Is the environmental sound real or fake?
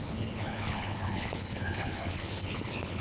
fake